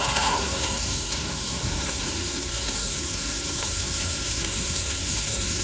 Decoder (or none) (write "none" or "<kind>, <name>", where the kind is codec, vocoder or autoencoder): codec, SNAC